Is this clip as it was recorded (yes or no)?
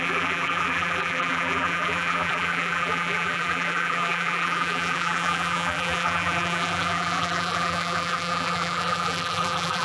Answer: no